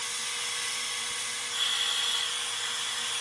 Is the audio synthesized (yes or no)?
no